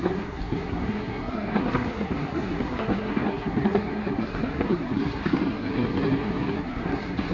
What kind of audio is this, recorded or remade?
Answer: remade